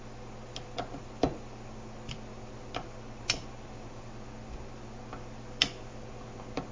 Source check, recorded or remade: recorded